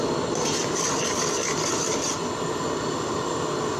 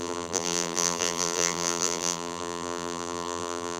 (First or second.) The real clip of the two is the first